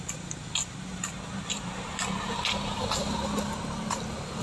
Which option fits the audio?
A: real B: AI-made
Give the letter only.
A